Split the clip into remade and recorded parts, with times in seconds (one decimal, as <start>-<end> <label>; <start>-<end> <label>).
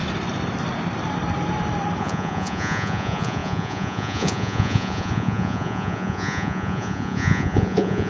0.0-2.0 recorded; 2.0-8.1 remade